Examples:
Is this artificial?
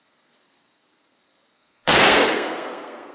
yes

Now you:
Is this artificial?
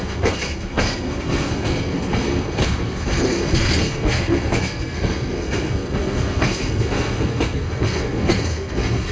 yes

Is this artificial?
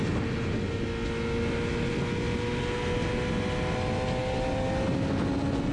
no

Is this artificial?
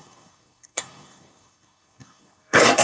yes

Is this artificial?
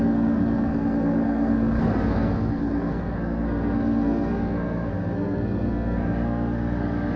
yes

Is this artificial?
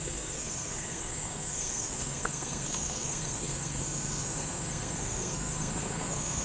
yes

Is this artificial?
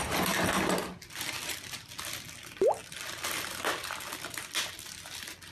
no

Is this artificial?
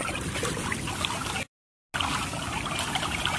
no